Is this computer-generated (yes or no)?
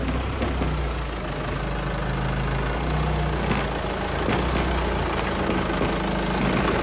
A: no